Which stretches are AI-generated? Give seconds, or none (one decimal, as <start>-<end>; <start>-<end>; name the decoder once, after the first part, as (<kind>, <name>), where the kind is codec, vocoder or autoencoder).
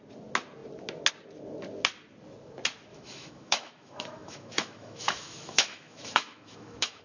2.9-7.0 (autoencoder, DAC-VAE)